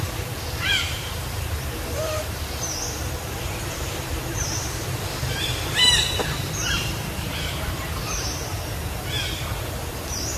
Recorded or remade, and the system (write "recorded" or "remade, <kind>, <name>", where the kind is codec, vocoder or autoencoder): remade, vocoder, BigVGAN v2